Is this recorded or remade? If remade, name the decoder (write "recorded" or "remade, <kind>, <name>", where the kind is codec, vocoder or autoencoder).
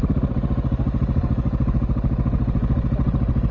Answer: recorded